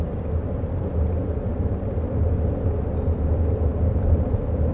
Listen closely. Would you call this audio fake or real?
real